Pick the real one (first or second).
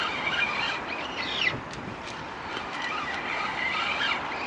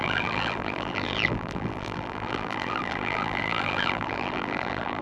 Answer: first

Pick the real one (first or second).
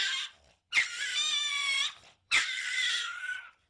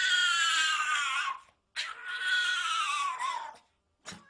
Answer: second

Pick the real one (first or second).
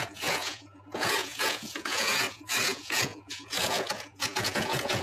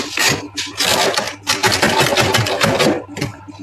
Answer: second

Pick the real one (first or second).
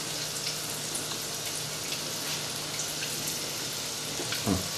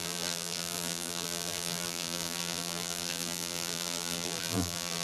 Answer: first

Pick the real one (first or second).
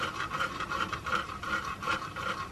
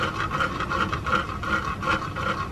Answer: second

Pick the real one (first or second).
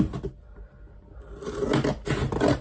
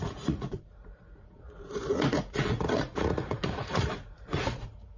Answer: first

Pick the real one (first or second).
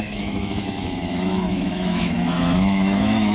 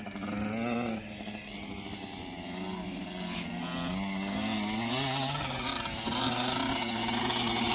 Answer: second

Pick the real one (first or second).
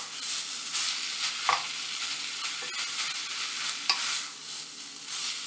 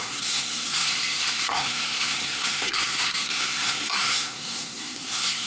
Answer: first